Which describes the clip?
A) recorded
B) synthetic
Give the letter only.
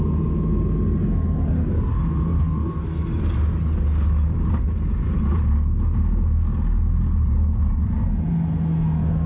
A